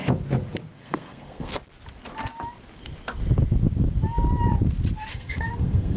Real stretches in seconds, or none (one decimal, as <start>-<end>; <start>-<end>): 0.0-0.7; 1.5-5.1